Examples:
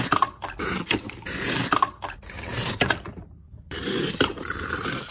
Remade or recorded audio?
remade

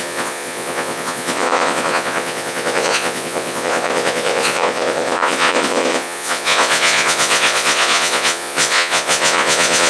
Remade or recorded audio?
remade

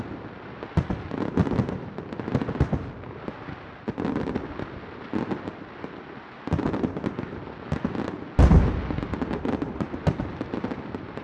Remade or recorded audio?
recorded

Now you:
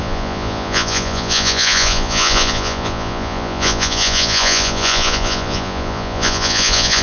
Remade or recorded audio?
remade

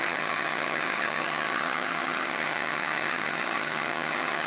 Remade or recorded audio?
remade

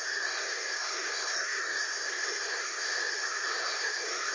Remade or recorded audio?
remade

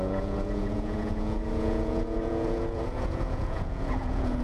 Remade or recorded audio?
remade